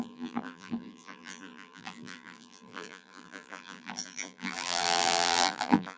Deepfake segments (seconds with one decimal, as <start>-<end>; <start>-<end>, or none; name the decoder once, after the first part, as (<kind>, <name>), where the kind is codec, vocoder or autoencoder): 0.0-6.0 (vocoder, BigVGAN v2)

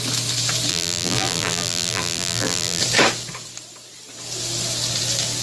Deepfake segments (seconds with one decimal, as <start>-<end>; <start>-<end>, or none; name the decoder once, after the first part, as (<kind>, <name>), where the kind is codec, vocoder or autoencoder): 0.7-2.8 (vocoder, BigVGAN v2)

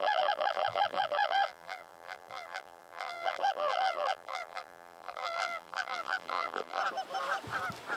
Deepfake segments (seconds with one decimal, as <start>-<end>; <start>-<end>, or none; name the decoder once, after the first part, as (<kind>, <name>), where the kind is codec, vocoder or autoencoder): 0.0-6.8 (vocoder, BigVGAN v2)